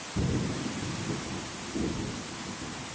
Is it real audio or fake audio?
real